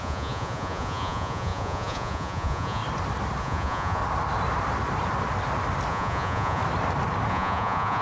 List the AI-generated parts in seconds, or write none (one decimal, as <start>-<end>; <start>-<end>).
0.0-2.8; 3.4-4.0; 5.9-6.6; 7.3-8.0